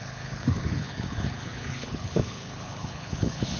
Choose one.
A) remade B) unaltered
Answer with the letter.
A